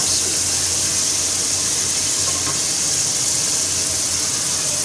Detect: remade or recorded recorded